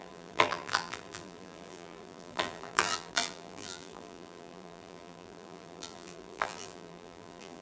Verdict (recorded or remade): remade